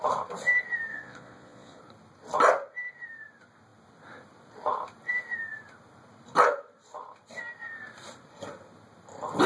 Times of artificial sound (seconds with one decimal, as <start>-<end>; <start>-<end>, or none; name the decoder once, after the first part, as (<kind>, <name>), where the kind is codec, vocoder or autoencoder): 0.9-1.8 (vocoder, Vocos)